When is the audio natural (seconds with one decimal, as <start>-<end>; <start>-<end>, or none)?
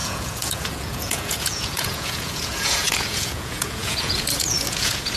none